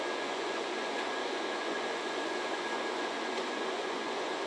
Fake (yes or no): yes